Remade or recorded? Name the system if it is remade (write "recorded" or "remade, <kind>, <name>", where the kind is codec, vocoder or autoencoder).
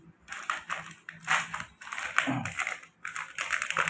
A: recorded